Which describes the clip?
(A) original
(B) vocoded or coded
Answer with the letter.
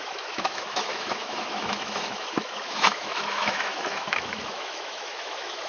B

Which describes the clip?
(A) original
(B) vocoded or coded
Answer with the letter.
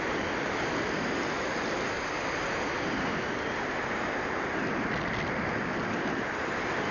A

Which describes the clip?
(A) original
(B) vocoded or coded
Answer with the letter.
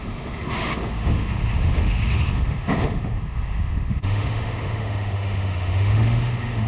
B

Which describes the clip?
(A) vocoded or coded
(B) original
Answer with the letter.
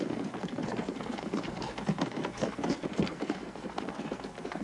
A